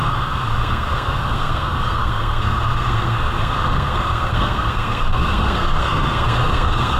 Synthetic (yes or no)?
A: yes